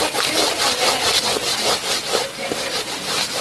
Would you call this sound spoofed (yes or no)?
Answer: no